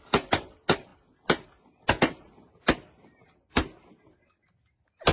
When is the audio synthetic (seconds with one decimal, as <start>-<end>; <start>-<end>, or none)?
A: none